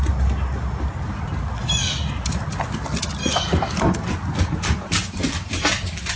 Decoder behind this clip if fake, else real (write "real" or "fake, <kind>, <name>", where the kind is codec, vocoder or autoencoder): real